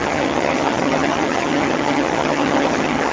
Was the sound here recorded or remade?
remade